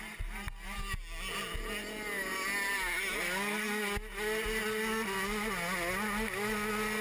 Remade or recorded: recorded